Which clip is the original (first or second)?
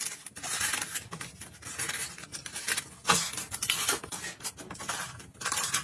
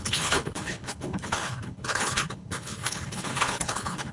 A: first